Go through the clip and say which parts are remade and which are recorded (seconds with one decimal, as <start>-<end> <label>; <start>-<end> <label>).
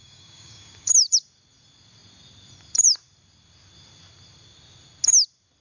0.0-0.9 remade; 0.9-5.6 recorded